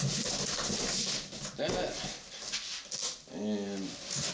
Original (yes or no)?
yes